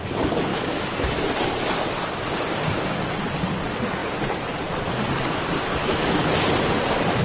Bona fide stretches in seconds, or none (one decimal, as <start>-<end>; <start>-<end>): 0.0-0.5; 1.2-5.8; 6.3-7.2